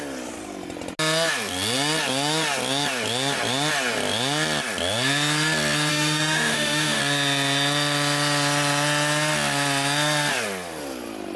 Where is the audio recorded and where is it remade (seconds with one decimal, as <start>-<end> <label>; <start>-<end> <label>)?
0.0-5.9 recorded; 5.9-7.0 remade; 7.0-11.4 recorded